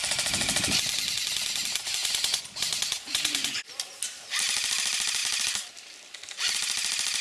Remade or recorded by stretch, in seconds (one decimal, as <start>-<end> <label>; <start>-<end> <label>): 0.0-2.0 recorded; 2.0-3.6 remade; 3.6-7.2 recorded